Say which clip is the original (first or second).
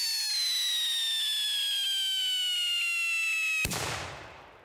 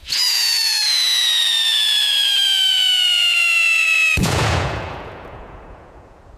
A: first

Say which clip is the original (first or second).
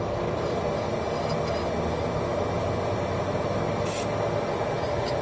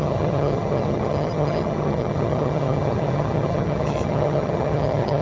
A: first